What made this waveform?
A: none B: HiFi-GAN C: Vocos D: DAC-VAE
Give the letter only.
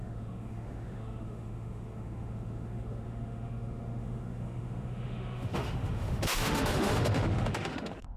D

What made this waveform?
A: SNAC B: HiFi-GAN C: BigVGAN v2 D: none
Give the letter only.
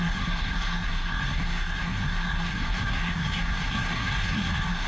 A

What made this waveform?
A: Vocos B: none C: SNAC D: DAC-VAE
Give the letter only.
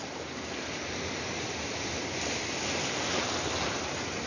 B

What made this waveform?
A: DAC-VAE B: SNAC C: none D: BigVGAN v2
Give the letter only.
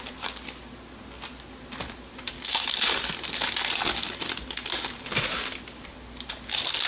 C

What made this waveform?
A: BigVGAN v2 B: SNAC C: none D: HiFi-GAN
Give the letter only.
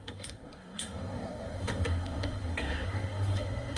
B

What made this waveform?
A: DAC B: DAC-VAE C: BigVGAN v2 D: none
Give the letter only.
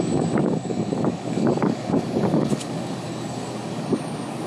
A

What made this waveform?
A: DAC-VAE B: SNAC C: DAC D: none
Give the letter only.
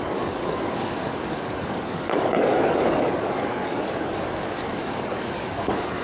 C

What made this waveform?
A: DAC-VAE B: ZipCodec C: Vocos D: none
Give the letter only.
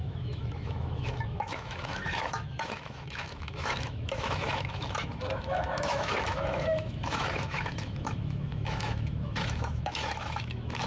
A